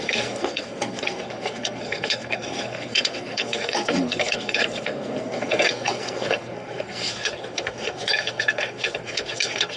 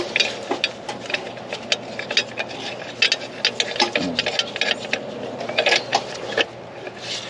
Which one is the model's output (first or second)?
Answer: first